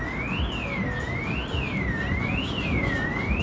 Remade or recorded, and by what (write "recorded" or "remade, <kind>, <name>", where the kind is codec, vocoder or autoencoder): recorded